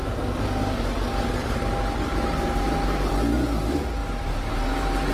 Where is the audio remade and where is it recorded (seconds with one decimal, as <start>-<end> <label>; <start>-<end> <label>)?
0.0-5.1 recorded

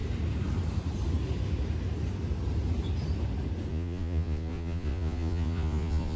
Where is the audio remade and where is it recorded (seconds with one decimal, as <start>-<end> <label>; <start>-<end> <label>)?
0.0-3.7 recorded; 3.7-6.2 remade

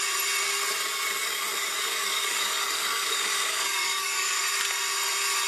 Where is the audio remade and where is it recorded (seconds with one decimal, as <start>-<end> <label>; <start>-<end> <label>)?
0.0-1.2 recorded; 1.2-4.4 remade; 4.4-5.5 recorded